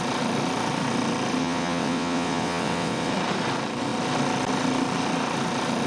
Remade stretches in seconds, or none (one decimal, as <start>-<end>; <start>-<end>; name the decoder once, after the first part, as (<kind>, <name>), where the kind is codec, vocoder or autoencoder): 1.4-3.1 (vocoder, WaveNeXt)

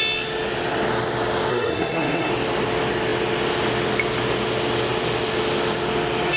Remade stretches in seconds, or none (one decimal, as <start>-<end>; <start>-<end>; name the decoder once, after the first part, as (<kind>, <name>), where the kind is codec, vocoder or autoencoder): 1.5-2.3 (codec, SNAC)